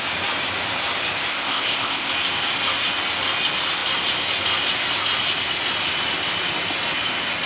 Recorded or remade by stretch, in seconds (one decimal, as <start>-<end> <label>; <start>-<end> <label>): 0.0-1.3 recorded; 1.3-2.1 remade; 2.1-7.5 recorded